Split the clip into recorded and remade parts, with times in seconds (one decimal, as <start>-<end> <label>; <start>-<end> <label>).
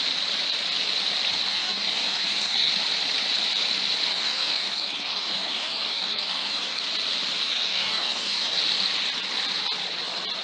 0.0-1.5 recorded; 1.5-2.7 remade; 2.7-4.1 recorded; 4.1-6.8 remade; 6.8-7.5 recorded; 7.5-8.6 remade; 8.6-10.4 recorded